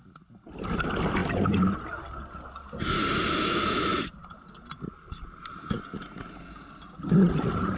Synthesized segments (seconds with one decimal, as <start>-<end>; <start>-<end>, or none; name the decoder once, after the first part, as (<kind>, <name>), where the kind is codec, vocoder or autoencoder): 3.9-4.8 (vocoder, BigVGAN v2)